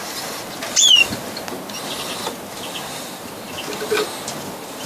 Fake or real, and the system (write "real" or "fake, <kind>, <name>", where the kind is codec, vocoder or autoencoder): real